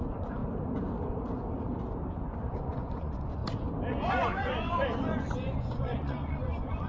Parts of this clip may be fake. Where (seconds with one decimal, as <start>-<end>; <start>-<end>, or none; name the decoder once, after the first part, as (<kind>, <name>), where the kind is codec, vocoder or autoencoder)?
0.0-0.4 (vocoder, Vocos); 2.5-3.4; 3.9-6.9